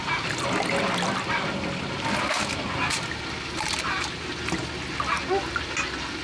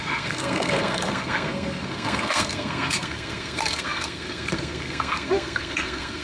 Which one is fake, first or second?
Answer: second